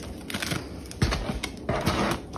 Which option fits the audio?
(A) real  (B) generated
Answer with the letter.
A